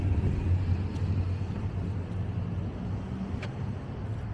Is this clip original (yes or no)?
yes